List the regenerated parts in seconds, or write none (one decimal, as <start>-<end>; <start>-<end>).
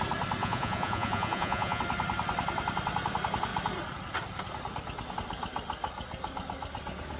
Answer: 0.4-1.8